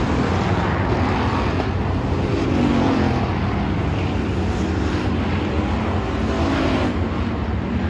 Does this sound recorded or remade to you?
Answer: recorded